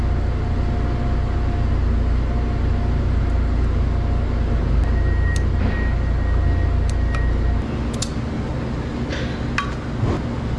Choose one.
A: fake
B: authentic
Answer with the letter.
B